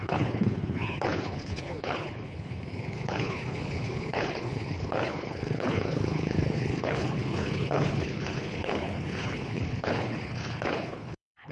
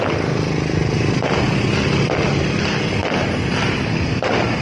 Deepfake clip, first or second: first